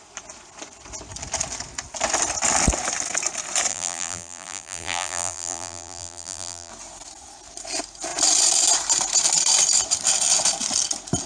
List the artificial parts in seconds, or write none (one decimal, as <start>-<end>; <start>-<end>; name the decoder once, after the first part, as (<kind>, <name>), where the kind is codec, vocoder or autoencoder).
3.7-6.7 (vocoder, BigVGAN v2)